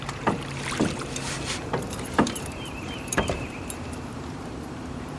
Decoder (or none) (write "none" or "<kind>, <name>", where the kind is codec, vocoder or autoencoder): vocoder, BigVGAN v2